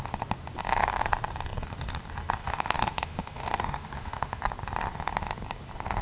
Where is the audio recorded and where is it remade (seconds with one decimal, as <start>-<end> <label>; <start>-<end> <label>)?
0.0-2.4 recorded; 2.4-4.4 remade; 4.4-6.0 recorded